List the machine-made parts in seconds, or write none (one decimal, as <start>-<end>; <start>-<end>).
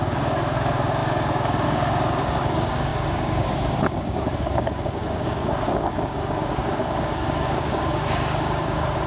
0.0-9.1